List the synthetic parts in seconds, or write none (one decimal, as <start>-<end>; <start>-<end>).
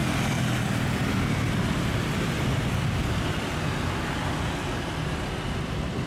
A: none